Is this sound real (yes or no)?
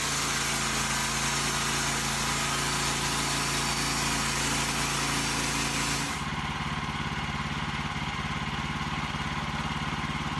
yes